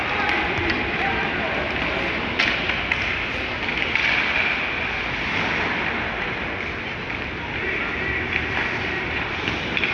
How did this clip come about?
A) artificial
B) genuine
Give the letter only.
B